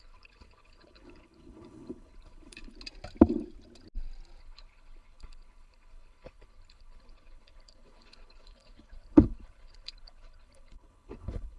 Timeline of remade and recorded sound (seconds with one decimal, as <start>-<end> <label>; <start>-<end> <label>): 0.0-2.7 remade; 2.7-4.4 recorded; 4.4-11.6 remade